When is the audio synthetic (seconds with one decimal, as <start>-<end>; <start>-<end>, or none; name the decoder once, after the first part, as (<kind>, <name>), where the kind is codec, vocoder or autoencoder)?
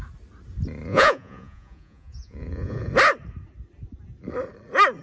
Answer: 0.9-2.9 (vocoder, Vocos)